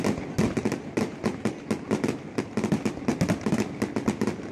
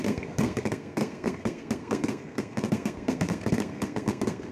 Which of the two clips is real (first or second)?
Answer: first